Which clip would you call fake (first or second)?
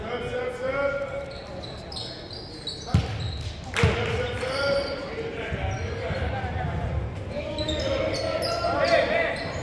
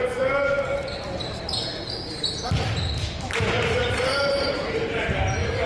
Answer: second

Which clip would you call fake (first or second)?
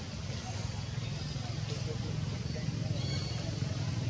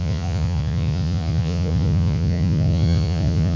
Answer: second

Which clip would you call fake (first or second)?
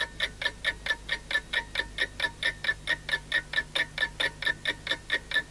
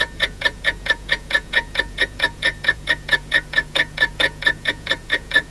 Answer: second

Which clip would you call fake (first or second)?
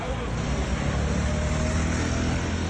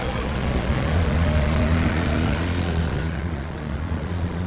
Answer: second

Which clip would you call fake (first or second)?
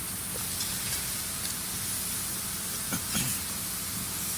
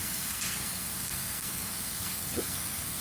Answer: second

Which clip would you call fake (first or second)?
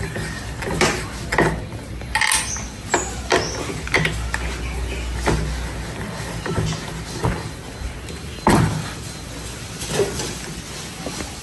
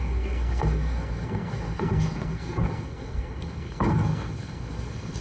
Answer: second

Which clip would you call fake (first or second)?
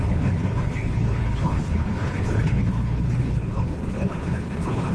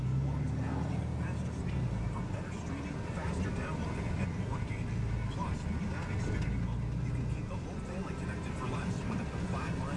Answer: first